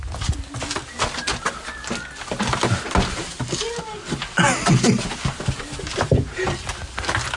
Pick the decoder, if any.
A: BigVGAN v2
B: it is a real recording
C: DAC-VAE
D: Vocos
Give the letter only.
B